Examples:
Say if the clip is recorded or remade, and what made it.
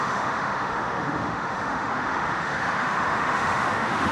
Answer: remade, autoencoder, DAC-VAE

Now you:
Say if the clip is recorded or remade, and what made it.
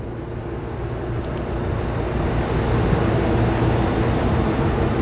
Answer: recorded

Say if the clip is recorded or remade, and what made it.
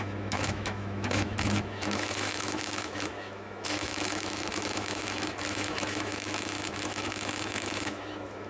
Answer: remade, autoencoder, DAC-VAE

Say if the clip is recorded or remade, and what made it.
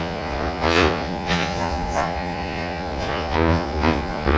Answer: remade, vocoder, Vocos